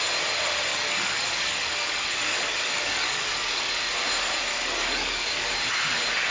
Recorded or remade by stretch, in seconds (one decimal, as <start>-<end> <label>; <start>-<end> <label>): 0.0-0.7 recorded; 0.7-3.9 remade; 3.9-4.5 recorded; 4.5-5.5 remade; 5.5-6.3 recorded